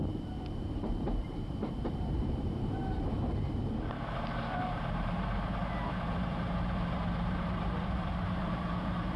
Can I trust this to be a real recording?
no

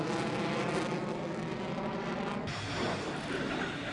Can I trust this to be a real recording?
yes